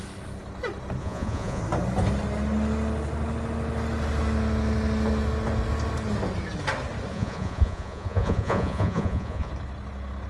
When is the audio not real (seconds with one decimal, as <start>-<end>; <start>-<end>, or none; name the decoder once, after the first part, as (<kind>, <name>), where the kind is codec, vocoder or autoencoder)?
1.0-1.6 (vocoder, Vocos); 7.1-9.5